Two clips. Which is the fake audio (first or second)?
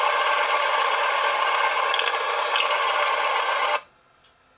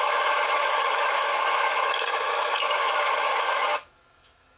second